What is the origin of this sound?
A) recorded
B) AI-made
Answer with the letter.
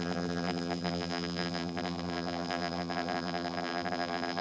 B